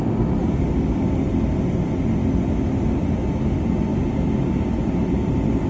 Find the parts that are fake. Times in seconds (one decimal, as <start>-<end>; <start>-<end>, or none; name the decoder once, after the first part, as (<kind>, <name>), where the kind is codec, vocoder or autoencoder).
3.9-5.7 (vocoder, BigVGAN v2)